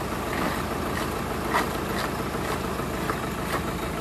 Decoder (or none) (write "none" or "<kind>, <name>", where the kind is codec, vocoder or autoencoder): none